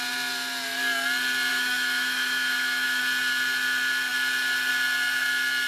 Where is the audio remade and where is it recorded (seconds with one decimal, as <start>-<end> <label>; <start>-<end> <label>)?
0.0-1.5 recorded; 1.5-3.0 remade; 3.0-5.7 recorded